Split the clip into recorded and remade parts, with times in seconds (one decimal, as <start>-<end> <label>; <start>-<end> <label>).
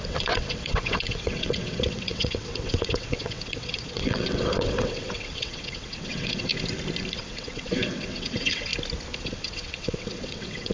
0.0-6.5 remade; 6.5-7.1 recorded; 7.1-8.7 remade; 8.7-9.2 recorded; 9.2-10.7 remade